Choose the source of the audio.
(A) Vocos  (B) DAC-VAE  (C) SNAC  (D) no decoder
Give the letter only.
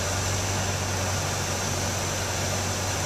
D